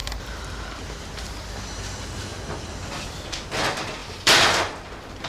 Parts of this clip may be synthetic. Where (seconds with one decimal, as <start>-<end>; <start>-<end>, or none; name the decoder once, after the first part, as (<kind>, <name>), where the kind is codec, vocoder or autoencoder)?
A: 0.0-1.5 (vocoder, BigVGAN v2); 2.3-3.1; 4.0-4.6